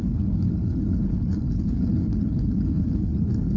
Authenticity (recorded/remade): remade